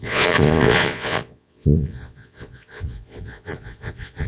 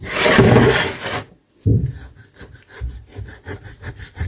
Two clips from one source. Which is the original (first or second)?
second